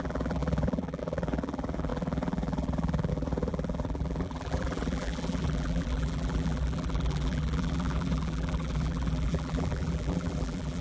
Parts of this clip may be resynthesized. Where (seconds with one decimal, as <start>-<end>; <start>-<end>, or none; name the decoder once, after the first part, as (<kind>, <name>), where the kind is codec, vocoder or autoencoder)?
0.0-10.8 (vocoder, BigVGAN v2)